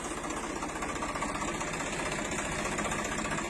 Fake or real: real